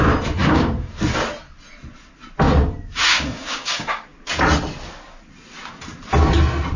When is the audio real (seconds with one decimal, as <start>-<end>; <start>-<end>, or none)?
0.0-0.4; 0.9-3.1; 4.3-6.8